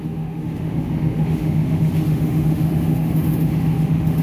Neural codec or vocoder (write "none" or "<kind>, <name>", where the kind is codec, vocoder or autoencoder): autoencoder, DAC-VAE